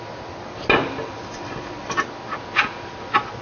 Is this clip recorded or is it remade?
recorded